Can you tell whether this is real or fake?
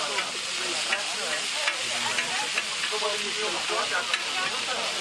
real